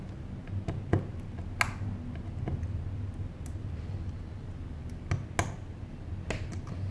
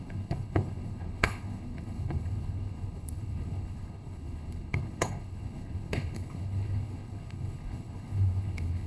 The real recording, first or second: first